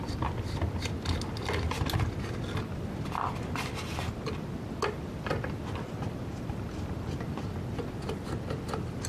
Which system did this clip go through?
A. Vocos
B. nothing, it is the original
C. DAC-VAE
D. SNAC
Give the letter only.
B